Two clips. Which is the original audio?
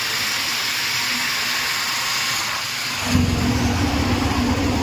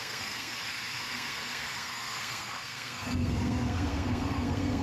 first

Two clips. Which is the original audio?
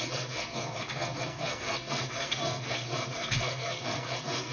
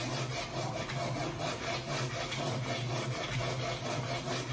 second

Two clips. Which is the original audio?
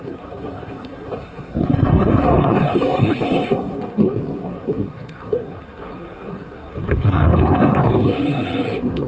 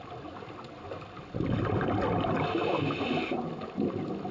second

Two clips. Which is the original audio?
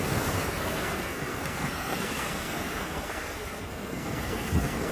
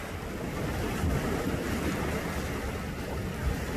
second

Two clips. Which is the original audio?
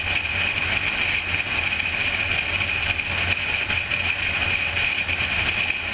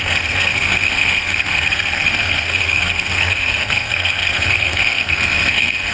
first